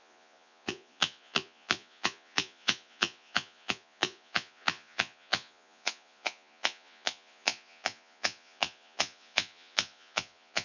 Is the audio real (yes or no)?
no